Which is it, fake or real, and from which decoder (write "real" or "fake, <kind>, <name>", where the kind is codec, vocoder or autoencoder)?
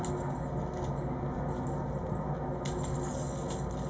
real